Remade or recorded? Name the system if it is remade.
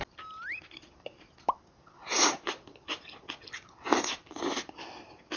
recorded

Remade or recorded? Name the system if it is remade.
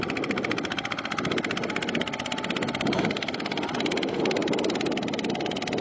recorded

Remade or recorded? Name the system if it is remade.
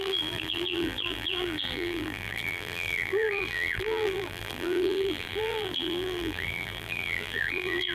remade, vocoder, BigVGAN v2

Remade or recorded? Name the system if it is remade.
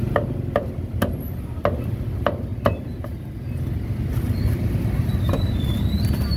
recorded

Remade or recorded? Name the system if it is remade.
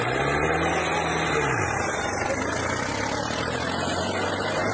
recorded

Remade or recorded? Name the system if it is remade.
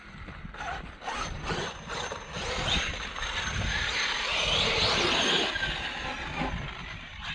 recorded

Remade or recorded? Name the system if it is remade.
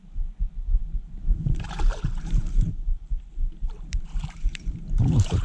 remade, vocoder, BigVGAN v2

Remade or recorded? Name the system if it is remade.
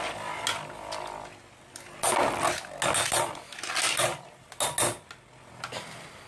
recorded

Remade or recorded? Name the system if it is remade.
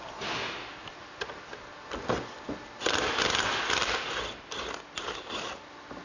recorded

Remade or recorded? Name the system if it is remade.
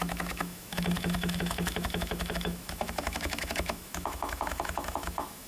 remade, autoencoder, DAC-VAE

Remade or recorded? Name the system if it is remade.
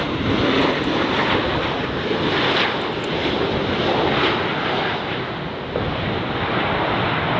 recorded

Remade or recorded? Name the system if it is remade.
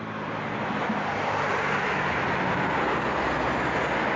recorded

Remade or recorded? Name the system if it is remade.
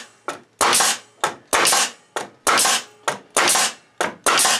recorded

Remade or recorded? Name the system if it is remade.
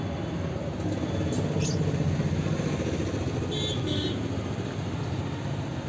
recorded